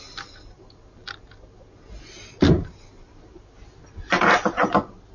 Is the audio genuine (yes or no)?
yes